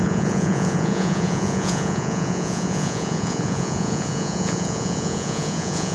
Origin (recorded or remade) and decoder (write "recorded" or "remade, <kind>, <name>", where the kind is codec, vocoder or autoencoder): remade, vocoder, Vocos